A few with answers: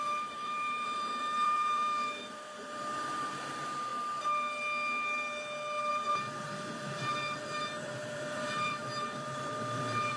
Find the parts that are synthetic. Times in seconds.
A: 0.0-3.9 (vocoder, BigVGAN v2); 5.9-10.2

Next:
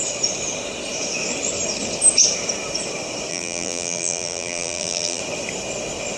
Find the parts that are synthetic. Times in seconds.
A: 3.3-5.2 (vocoder, BigVGAN v2)

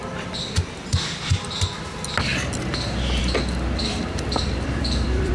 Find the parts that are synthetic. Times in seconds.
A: 0.0-0.5 (vocoder, BigVGAN v2); 2.3-5.3

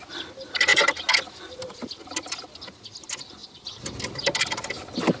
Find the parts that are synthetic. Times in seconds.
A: 3.4-3.9 (vocoder, BigVGAN v2)

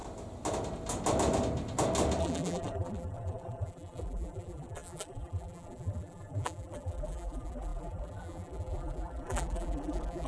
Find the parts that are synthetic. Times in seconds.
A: 2.2-10.3 (vocoder, BigVGAN v2)

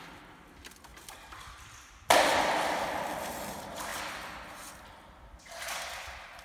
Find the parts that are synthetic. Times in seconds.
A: none

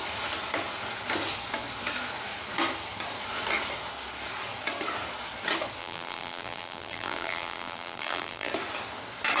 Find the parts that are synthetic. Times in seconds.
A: 5.8-8.5 (vocoder, BigVGAN v2)

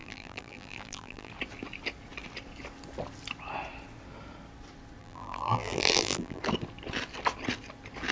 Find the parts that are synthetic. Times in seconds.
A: 0.0-1.3 (vocoder, BigVGAN v2); 5.0-6.4